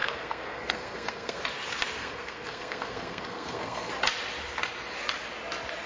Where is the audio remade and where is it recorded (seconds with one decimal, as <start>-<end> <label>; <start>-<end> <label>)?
0.0-1.4 remade; 1.4-2.0 recorded; 2.0-3.9 remade; 3.9-5.9 recorded